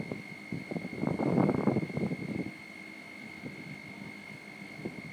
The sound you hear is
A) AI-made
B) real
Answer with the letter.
B